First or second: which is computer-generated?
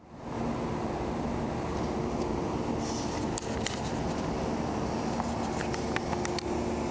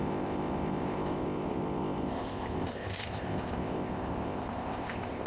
second